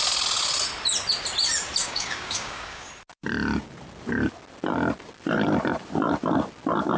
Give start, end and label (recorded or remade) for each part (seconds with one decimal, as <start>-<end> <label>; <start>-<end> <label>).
0.0-1.8 recorded; 1.8-2.9 remade; 2.9-7.0 recorded